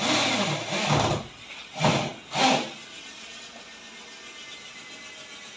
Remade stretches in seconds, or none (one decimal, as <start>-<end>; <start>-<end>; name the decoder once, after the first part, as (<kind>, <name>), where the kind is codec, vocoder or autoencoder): none